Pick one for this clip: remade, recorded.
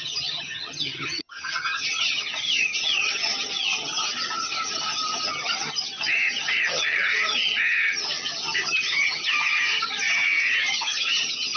remade